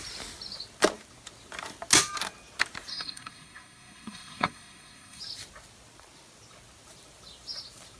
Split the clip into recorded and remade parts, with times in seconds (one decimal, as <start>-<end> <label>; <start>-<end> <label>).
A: 0.0-2.9 recorded; 2.9-5.2 remade; 5.2-8.0 recorded